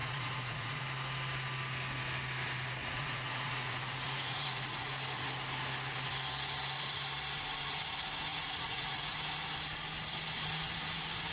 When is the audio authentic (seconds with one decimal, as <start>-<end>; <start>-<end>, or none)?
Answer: 0.8-2.8; 4.9-8.3; 9.1-11.3